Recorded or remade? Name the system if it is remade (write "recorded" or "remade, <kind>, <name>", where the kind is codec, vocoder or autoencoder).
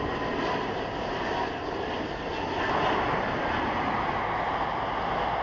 recorded